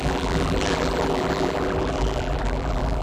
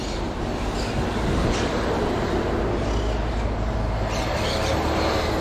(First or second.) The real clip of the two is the second